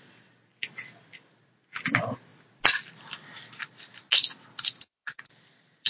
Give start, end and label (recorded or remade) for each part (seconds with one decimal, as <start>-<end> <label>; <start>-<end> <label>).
0.0-5.9 recorded